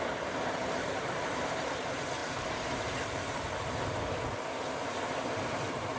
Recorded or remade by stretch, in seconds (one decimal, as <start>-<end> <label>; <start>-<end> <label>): 0.0-0.6 recorded; 0.6-1.8 remade; 1.8-2.2 recorded; 2.2-3.4 remade; 3.4-6.0 recorded